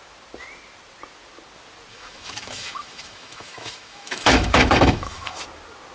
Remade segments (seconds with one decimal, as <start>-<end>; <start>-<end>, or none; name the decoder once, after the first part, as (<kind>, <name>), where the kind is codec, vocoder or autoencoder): 1.9-5.4 (autoencoder, DAC-VAE)